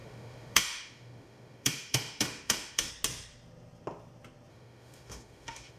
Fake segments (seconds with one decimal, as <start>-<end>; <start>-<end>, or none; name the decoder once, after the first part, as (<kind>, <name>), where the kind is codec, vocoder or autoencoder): 0.0-2.9 (autoencoder, DAC-VAE); 4.5-5.8